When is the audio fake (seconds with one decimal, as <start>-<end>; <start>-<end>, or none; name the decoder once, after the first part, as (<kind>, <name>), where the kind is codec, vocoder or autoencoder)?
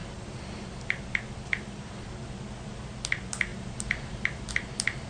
0.0-2.3 (vocoder, BigVGAN v2); 3.5-4.5